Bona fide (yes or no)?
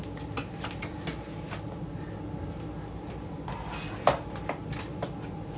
yes